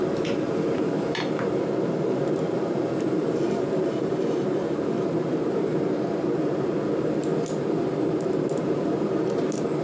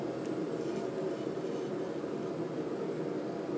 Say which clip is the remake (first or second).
first